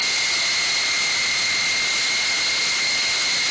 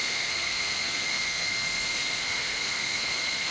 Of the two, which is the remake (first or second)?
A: second